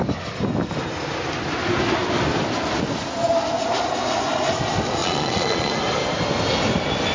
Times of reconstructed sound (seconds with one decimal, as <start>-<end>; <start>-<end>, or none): 5.0-5.8